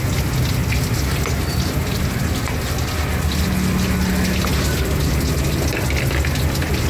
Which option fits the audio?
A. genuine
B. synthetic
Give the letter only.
A